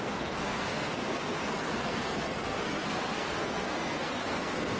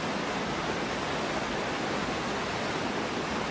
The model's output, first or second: first